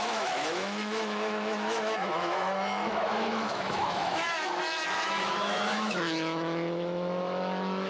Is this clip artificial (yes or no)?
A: yes